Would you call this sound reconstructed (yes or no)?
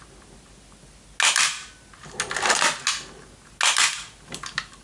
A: no